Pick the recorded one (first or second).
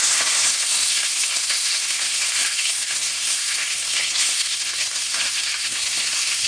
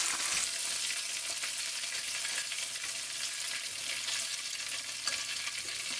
second